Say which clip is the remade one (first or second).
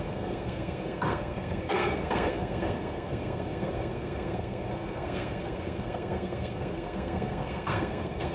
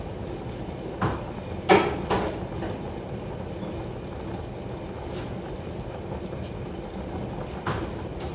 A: first